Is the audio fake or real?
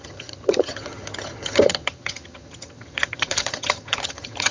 fake